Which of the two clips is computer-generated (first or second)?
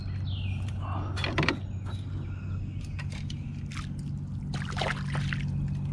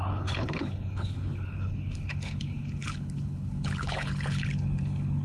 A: second